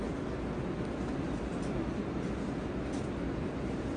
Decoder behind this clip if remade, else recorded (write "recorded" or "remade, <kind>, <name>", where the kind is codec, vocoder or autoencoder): recorded